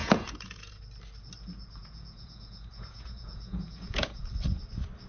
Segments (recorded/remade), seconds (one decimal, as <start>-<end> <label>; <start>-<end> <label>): 0.0-0.8 remade; 0.8-1.8 recorded; 1.8-4.3 remade; 4.3-5.1 recorded